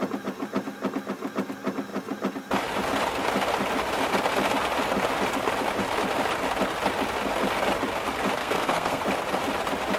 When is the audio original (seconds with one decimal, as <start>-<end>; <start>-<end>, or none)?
0.0-8.4; 9.0-10.0